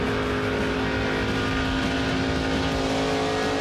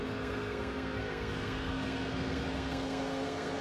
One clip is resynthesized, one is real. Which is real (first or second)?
first